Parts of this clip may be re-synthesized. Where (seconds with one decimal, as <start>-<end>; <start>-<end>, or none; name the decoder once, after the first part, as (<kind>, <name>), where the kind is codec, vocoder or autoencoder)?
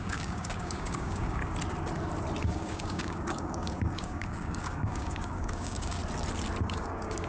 0.0-1.4 (codec, DAC); 2.4-6.0; 6.6-7.3